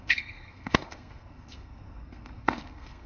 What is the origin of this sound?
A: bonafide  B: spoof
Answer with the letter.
B